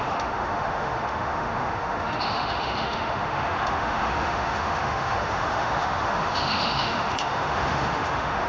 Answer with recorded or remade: remade